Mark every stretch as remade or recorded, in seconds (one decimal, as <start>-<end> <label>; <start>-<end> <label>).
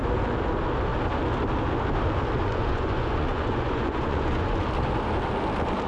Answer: 0.0-2.5 recorded; 2.5-4.6 remade; 4.6-5.9 recorded